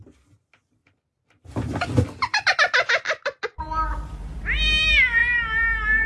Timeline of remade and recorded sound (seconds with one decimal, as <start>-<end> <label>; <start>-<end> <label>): 0.0-6.1 recorded